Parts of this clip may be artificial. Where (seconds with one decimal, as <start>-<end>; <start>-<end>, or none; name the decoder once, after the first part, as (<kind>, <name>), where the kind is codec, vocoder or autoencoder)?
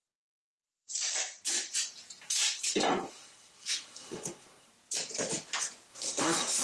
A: 0.0-0.9 (codec, SNAC); 2.2-4.7; 5.9-6.6